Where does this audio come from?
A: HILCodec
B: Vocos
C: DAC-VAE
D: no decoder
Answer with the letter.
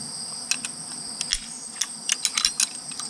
D